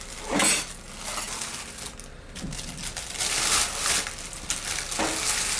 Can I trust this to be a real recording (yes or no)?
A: yes